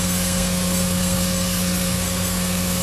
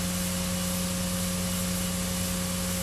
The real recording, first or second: second